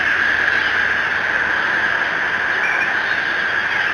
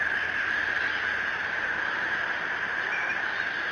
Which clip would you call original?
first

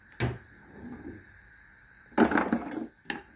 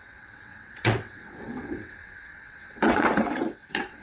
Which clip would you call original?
first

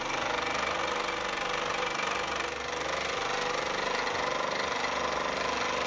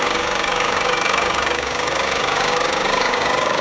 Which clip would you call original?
first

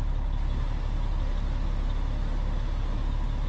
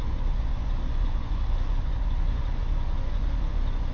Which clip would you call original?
first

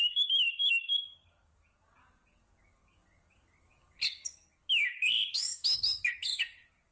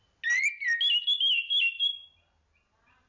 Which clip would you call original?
second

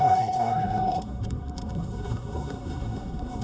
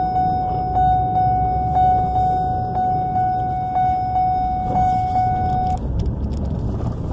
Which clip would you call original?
second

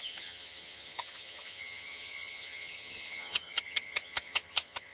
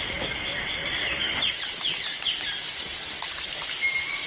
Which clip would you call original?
second